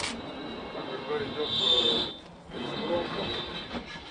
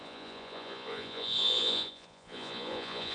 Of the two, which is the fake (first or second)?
second